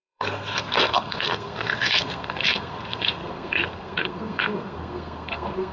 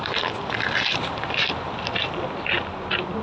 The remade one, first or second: first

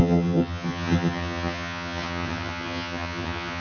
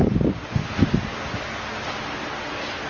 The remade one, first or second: first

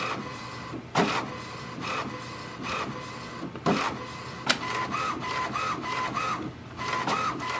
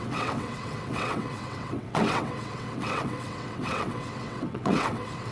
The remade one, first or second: second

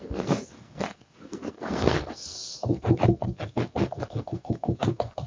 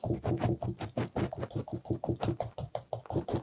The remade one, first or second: first